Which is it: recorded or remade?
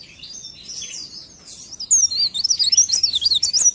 recorded